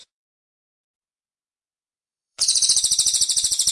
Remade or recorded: remade